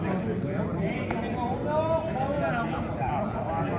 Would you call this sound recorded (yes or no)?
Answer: yes